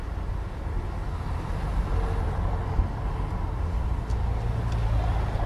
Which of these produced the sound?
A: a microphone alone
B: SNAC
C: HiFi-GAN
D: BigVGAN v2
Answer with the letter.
A